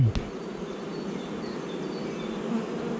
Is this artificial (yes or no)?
no